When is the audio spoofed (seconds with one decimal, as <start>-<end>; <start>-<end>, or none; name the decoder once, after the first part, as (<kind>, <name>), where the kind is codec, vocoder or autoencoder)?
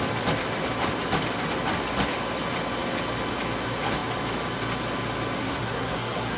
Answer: 5.4-6.4 (codec, SNAC)